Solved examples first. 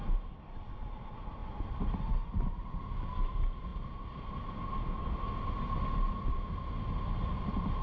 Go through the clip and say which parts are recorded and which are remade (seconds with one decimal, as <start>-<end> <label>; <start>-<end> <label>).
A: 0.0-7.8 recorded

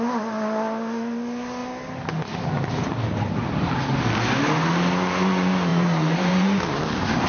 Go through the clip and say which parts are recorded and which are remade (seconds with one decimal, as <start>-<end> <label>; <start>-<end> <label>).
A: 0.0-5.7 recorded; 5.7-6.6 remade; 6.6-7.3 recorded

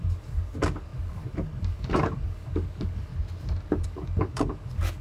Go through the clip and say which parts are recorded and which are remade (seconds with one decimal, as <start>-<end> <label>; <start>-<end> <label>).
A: 0.0-3.1 remade; 3.1-3.7 recorded; 3.7-5.0 remade

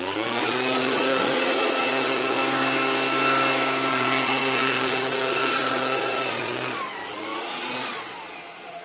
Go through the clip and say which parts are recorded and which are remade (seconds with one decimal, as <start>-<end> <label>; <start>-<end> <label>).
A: 0.0-2.4 remade; 2.4-3.9 recorded; 3.9-8.8 remade

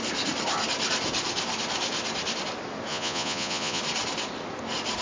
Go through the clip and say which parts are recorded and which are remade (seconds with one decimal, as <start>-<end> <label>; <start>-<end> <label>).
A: 0.0-2.9 recorded; 2.9-3.8 remade; 3.8-5.0 recorded